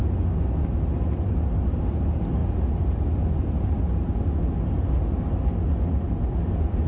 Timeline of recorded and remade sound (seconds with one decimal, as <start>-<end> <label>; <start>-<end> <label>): 0.0-6.9 recorded